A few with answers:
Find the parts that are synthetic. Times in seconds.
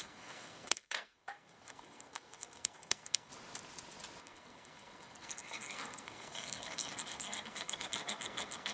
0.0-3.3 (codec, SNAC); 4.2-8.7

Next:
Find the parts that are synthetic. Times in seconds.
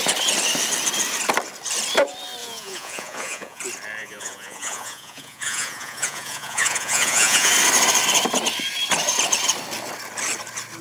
2.4-3.6 (vocoder, Vocos); 4.0-7.5